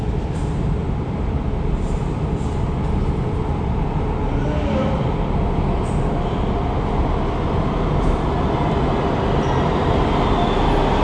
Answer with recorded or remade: recorded